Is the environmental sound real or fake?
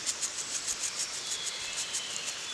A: real